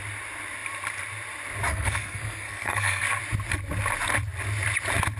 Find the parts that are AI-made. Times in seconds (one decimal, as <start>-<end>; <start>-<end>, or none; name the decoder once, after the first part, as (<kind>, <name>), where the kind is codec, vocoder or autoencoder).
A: 1.7-3.2 (codec, SNAC)